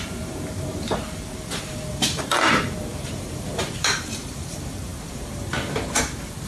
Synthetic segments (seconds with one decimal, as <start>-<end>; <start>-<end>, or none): 0.0-6.5